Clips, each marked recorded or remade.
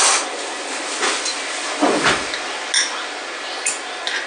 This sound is recorded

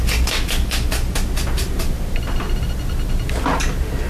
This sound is recorded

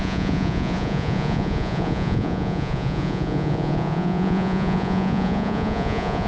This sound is remade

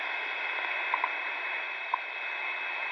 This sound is recorded